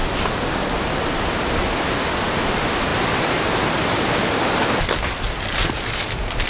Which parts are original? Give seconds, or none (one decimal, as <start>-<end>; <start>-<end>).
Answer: 0.0-6.5